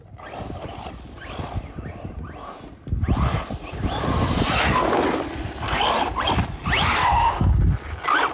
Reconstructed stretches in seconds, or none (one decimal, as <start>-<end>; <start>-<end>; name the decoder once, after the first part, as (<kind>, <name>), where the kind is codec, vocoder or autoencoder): 7.0-7.6 (codec, DAC)